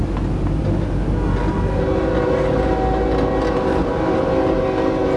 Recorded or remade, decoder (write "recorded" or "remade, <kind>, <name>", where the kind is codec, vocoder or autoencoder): recorded